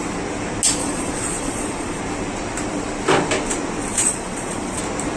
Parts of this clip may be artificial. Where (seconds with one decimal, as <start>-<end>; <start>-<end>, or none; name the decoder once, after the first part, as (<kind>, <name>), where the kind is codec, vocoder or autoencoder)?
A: 0.8-2.0 (vocoder, Vocos); 3.9-4.8